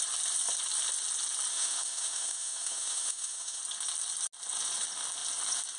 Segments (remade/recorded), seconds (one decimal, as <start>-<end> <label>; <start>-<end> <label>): 0.0-1.5 recorded; 1.5-3.6 remade; 3.6-5.8 recorded